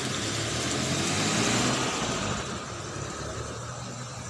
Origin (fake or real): real